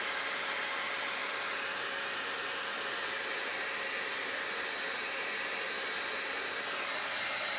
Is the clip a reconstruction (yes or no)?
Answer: yes